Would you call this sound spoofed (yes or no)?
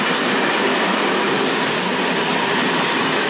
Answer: no